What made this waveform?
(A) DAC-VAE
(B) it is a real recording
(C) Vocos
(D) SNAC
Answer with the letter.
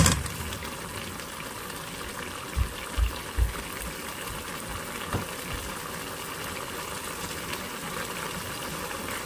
B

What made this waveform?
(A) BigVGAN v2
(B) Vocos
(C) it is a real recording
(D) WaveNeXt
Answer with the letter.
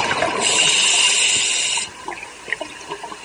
C